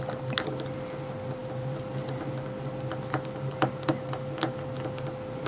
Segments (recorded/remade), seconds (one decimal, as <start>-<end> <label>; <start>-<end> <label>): 0.0-5.5 recorded